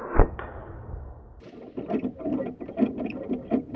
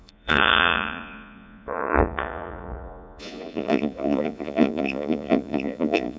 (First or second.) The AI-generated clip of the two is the second